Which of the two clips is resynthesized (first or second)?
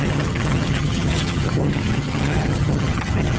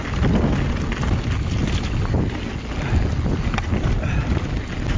first